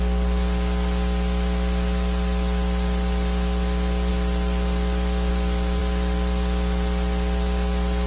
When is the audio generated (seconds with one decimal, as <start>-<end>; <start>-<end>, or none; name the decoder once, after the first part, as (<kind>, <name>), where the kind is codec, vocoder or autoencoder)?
none